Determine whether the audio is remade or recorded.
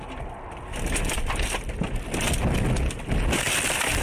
recorded